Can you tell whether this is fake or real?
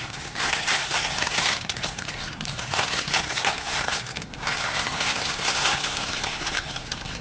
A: fake